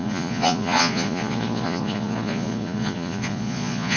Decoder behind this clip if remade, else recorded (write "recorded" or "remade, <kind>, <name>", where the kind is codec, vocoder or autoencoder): remade, vocoder, Vocos